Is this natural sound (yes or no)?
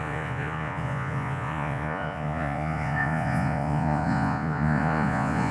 no